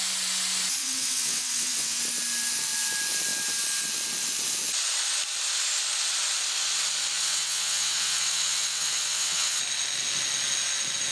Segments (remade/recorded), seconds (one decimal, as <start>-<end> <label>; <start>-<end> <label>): 0.0-0.8 recorded; 0.8-2.0 remade; 2.0-7.2 recorded; 7.2-9.6 remade; 9.6-11.1 recorded